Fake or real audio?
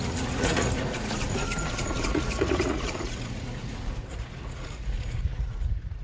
fake